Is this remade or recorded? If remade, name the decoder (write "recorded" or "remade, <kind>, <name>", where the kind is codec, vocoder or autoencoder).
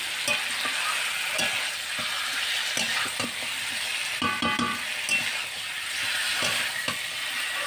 recorded